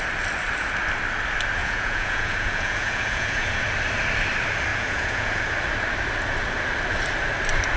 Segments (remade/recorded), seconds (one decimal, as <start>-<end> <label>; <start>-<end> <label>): 0.0-1.6 recorded; 1.6-3.6 remade; 3.6-4.7 recorded; 4.7-5.5 remade; 5.5-7.8 recorded